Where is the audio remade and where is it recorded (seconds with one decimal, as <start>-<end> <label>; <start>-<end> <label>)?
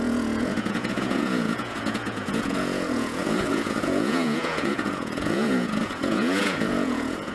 0.0-7.3 remade